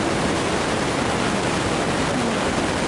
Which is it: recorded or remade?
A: recorded